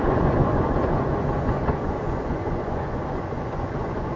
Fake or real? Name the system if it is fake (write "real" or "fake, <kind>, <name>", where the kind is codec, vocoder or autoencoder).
fake, vocoder, Vocos